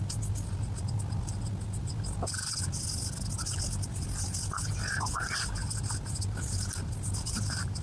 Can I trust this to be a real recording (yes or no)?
yes